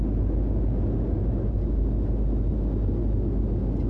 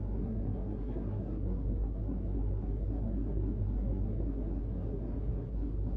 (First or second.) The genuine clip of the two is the first